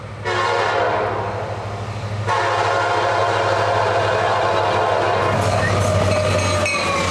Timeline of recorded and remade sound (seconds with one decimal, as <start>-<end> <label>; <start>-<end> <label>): 0.0-7.1 recorded